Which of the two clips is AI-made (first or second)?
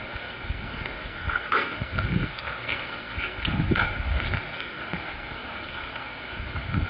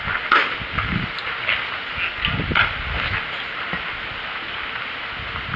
first